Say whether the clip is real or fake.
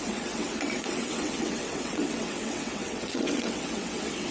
fake